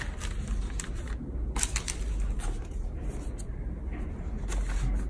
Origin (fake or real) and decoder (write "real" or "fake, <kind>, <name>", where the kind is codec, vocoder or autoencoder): real